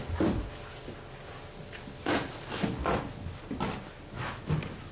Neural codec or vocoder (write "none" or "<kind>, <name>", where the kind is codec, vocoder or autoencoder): none